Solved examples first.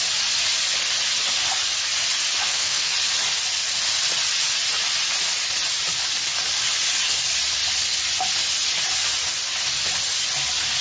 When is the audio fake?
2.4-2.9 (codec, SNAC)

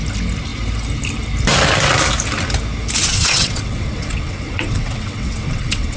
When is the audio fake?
3.0-6.0 (vocoder, WaveNeXt)

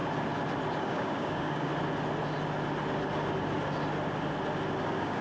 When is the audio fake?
0.8-1.7 (codec, DAC); 4.8-5.2

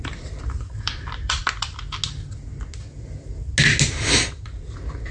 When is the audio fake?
0.0-1.4 (vocoder, BigVGAN v2); 4.5-5.1

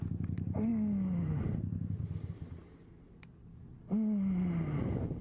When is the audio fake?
none

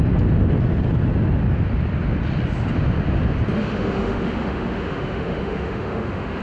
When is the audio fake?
3.6-6.4 (autoencoder, DAC-VAE)

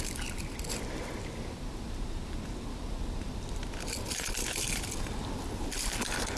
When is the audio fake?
none